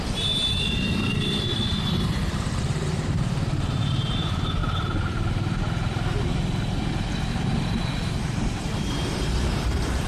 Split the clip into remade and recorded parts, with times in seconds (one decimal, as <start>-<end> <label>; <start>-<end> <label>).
0.0-1.1 remade; 1.1-2.3 recorded; 2.3-4.6 remade; 4.6-7.3 recorded; 7.3-10.1 remade

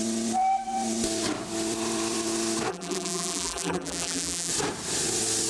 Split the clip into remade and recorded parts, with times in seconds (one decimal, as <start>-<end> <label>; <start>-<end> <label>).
0.0-2.7 recorded; 2.7-4.5 remade; 4.5-5.5 recorded